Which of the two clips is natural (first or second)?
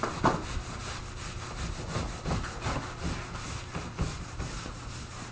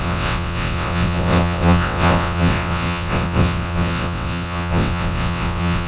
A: first